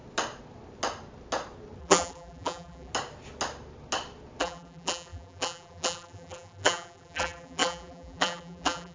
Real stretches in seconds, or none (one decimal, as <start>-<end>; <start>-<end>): 0.0-1.8; 2.9-4.4